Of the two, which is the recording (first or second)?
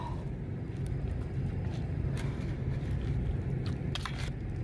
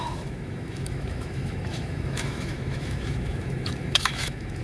first